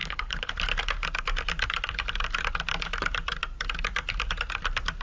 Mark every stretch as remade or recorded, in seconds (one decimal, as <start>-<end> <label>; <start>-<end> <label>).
0.0-0.5 remade; 0.5-5.0 recorded